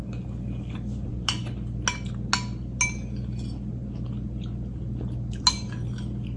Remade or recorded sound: recorded